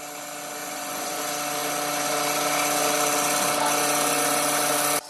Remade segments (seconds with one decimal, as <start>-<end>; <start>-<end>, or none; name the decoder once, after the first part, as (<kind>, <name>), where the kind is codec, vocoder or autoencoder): 0.6-1.2 (vocoder, Vocos)